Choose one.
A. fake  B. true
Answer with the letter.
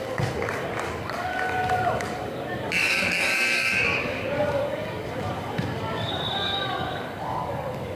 A